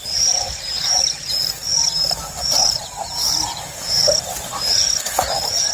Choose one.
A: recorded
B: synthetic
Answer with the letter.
B